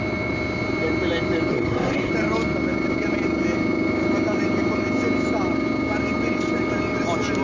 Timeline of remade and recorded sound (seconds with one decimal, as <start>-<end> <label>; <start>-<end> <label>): 0.0-1.5 recorded; 1.5-2.1 remade; 2.1-7.4 recorded